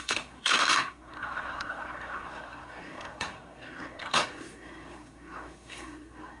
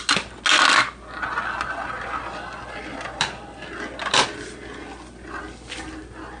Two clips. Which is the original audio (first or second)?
second